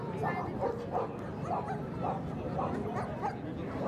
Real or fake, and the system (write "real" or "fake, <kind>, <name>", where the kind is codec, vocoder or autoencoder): real